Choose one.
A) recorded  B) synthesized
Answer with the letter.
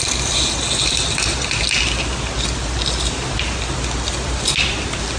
A